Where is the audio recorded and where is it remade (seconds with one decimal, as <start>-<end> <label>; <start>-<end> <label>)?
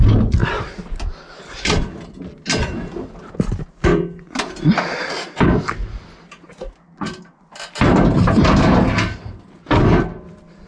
0.0-10.7 recorded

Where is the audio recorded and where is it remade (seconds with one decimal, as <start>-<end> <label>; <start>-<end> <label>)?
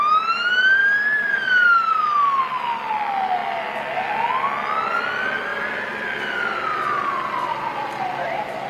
0.0-8.7 recorded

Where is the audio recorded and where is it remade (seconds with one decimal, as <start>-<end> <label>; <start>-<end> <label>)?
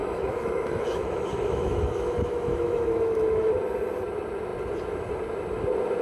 0.0-3.6 remade; 3.6-6.0 recorded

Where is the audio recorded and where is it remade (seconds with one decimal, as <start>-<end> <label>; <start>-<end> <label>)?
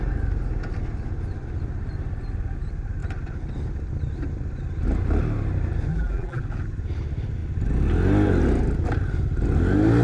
0.0-5.9 recorded; 5.9-6.4 remade; 6.4-10.0 recorded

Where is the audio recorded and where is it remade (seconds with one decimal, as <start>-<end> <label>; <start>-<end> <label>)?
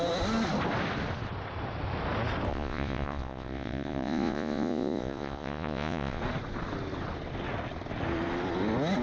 0.0-2.5 recorded; 2.5-6.2 remade; 6.2-9.0 recorded